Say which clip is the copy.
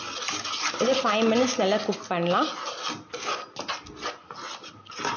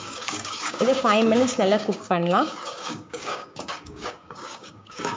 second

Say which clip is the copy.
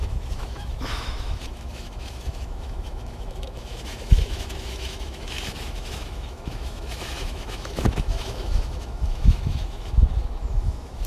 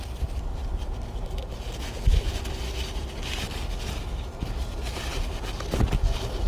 first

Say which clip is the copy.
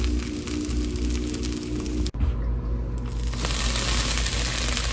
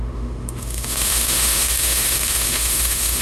second